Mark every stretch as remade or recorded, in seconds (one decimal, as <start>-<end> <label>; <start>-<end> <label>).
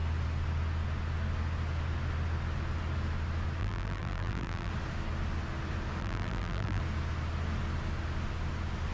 0.0-3.6 recorded; 3.6-4.7 remade; 4.7-6.0 recorded; 6.0-6.8 remade; 6.8-8.9 recorded